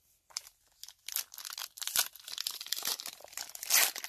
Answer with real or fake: real